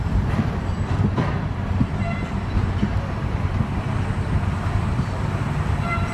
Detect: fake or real fake